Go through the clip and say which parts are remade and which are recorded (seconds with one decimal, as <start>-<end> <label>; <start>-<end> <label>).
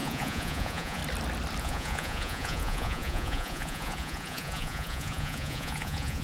0.0-1.0 remade; 1.0-1.6 recorded; 1.6-6.2 remade